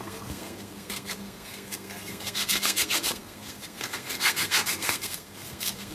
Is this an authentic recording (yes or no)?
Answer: no